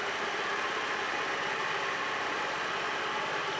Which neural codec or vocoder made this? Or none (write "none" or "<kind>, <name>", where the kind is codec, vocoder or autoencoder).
none